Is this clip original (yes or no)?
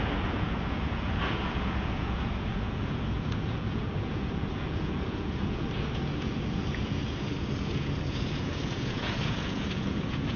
no